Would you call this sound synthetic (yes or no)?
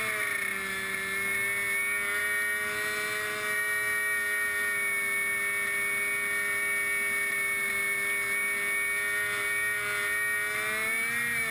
no